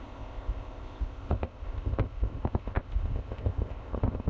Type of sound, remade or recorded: remade